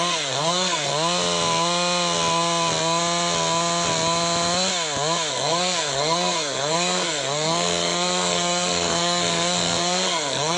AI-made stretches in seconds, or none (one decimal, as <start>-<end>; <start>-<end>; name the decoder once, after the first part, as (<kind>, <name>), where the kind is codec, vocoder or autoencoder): 0.0-0.9 (codec, SNAC); 5.3-10.6